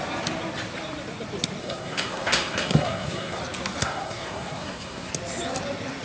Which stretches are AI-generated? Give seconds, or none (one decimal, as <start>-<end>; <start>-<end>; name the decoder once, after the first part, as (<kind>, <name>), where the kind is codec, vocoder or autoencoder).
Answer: 1.6-3.4 (codec, SNAC); 3.8-5.1